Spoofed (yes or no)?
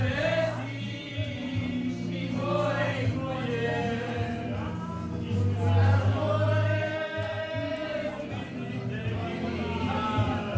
no